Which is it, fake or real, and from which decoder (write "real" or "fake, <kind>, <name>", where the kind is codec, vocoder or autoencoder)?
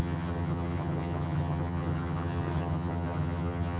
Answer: fake, vocoder, HiFi-GAN